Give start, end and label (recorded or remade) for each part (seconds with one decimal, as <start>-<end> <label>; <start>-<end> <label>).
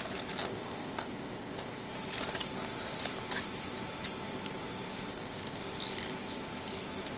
0.0-0.4 recorded; 0.4-1.9 remade; 1.9-5.1 recorded; 5.1-5.6 remade; 5.6-7.2 recorded